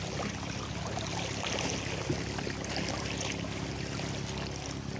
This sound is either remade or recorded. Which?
recorded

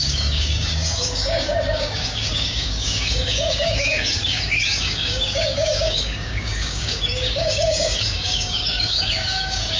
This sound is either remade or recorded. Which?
remade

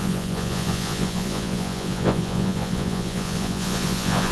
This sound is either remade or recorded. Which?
remade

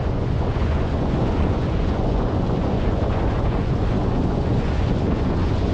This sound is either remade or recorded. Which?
remade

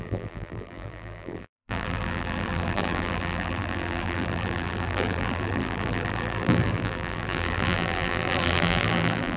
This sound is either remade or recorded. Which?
remade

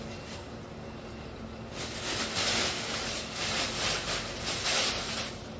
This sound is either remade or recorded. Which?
recorded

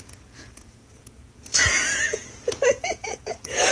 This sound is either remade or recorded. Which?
remade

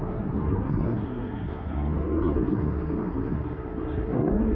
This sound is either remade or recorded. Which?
remade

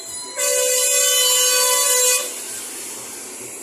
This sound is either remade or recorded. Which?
recorded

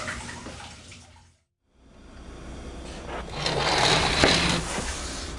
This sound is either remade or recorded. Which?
recorded